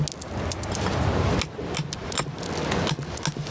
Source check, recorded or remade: recorded